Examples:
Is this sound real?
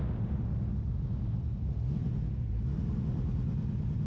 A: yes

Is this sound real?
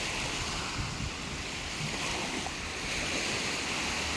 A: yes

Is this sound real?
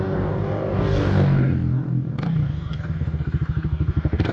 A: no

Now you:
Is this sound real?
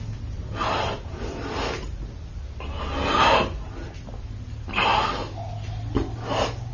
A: yes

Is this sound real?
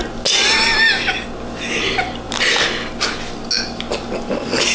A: yes